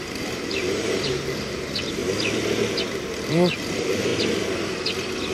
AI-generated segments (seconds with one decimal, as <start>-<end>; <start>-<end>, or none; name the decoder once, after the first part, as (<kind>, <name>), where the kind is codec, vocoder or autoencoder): 0.0-2.0 (vocoder, BigVGAN v2); 3.3-4.1